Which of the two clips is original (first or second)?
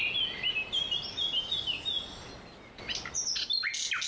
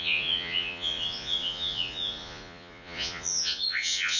first